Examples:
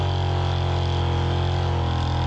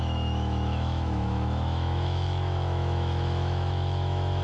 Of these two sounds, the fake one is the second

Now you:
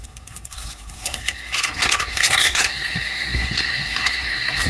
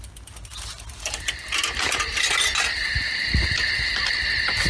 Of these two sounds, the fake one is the first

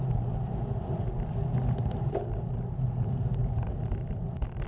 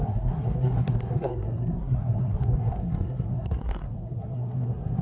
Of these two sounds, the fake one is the second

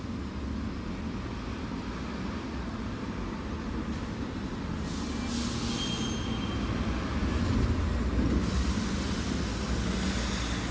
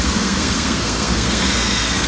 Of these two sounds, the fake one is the second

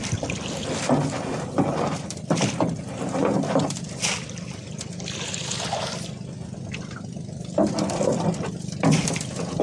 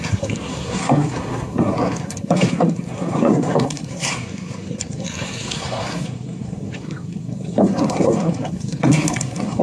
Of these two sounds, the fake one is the second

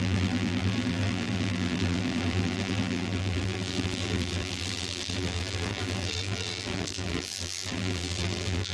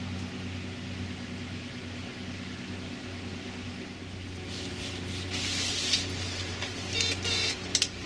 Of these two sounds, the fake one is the first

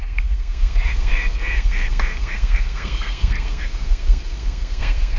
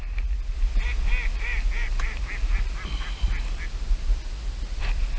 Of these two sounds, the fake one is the first